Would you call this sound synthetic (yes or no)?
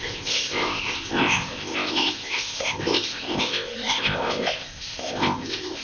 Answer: yes